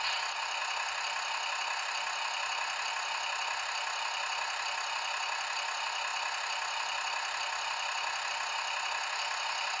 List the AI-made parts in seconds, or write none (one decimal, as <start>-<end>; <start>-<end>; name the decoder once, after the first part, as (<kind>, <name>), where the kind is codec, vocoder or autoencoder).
none